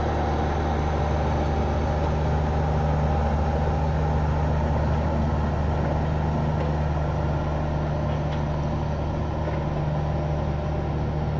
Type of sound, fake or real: real